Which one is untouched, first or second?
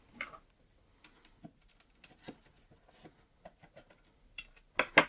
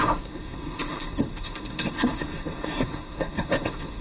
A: first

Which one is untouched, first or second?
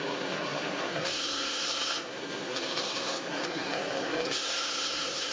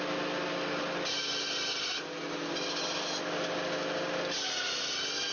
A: second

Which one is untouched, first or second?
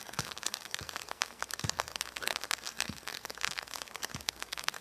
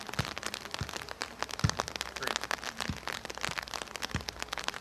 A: second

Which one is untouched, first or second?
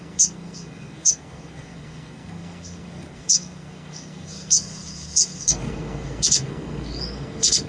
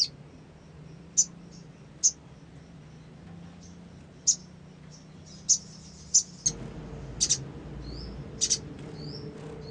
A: second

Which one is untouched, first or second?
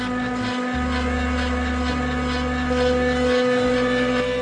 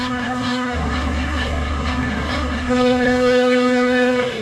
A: first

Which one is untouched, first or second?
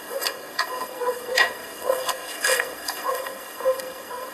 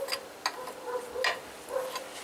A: second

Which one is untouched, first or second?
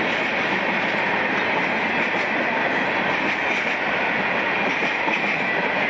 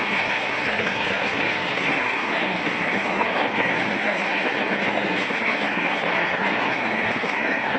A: first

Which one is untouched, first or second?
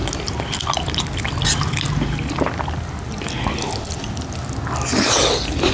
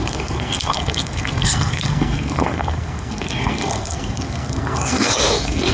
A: first